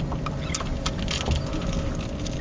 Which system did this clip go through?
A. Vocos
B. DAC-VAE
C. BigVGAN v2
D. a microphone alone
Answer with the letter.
D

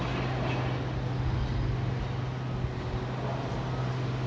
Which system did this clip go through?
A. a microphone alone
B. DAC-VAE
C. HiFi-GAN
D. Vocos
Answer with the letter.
A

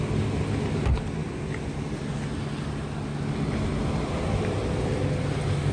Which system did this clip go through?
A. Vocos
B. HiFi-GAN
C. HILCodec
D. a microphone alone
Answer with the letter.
D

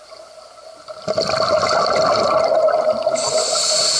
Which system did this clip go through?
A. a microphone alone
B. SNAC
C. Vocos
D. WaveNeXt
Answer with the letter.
A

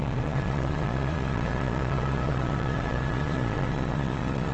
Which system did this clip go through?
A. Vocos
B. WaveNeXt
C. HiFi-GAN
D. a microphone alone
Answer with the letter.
A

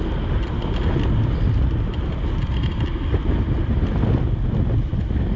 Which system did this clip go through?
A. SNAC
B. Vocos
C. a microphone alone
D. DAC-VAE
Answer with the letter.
C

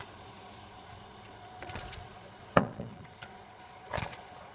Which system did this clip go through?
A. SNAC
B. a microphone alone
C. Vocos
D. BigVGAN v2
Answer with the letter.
C